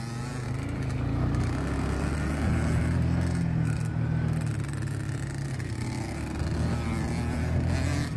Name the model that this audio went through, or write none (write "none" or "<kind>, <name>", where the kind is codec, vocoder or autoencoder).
none